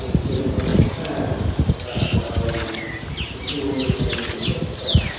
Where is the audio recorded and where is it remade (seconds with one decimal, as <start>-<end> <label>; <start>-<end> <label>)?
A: 0.0-5.2 recorded